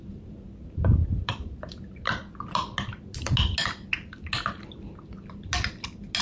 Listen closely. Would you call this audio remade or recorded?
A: recorded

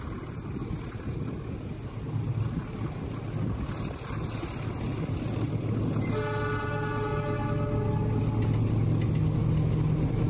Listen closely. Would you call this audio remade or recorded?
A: recorded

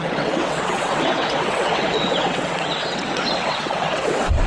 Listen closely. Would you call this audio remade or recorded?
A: remade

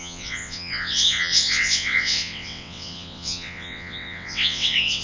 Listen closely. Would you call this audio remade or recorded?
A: remade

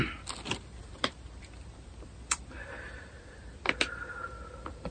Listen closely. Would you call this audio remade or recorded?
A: recorded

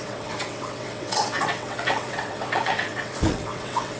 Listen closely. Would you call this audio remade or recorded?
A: remade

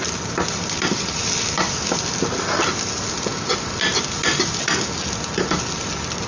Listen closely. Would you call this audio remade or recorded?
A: recorded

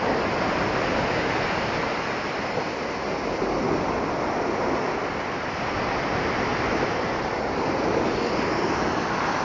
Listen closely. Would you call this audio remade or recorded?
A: recorded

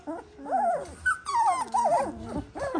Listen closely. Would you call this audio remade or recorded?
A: recorded